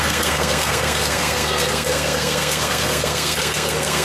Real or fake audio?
fake